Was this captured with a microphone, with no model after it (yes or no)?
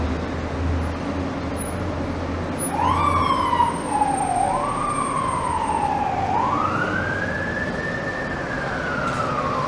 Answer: yes